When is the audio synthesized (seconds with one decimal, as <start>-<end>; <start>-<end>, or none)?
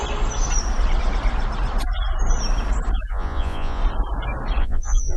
3.1-3.8; 4.6-5.2